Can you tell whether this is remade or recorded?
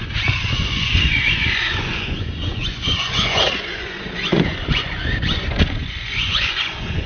remade